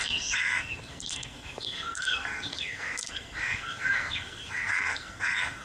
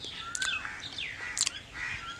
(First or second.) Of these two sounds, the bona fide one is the second